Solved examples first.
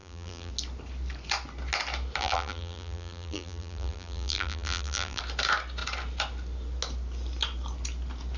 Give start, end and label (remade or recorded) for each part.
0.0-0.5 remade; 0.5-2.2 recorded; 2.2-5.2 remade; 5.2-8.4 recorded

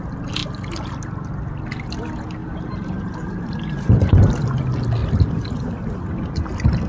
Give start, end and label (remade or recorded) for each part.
0.0-2.4 recorded; 2.4-4.3 remade; 4.3-6.9 recorded

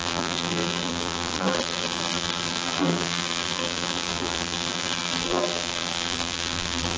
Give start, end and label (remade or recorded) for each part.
0.0-7.0 remade